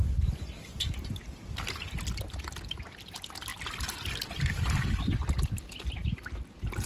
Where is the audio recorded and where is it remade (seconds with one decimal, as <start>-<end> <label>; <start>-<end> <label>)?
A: 0.0-6.9 recorded